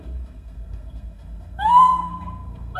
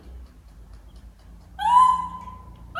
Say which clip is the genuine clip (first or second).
second